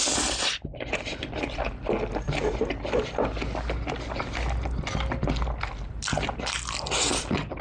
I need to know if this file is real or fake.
real